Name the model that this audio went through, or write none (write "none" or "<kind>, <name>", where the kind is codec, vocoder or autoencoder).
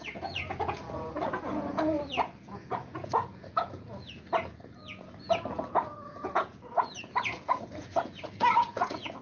vocoder, Vocos